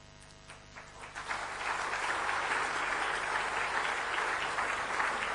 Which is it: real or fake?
real